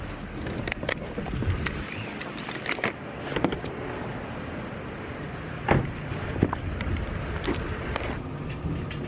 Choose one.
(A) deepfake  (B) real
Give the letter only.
B